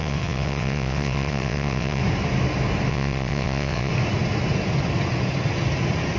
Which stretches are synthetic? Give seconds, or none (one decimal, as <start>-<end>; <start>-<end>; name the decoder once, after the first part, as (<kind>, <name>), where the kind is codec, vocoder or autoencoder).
0.0-2.0 (vocoder, WaveNeXt); 2.9-3.9